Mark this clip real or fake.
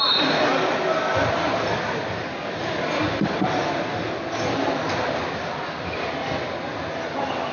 real